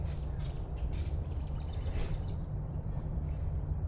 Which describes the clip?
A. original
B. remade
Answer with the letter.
B